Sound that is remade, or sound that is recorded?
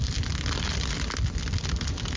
recorded